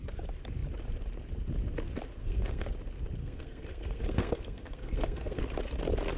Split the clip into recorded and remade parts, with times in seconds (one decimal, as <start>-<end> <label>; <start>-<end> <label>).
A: 0.0-2.2 recorded; 2.2-2.7 remade; 2.7-3.2 recorded; 3.2-5.4 remade; 5.4-6.2 recorded